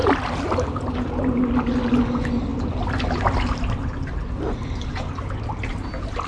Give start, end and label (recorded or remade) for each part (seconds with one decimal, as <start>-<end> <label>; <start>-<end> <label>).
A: 0.0-1.3 remade; 1.3-6.3 recorded